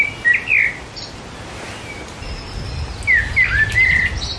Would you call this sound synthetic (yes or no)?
no